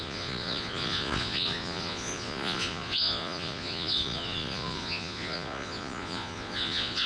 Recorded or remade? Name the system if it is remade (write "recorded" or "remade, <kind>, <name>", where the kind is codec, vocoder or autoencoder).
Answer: remade, vocoder, Vocos